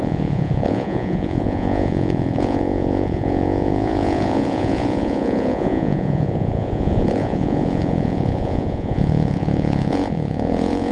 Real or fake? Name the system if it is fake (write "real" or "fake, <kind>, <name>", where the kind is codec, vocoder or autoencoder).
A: fake, vocoder, Vocos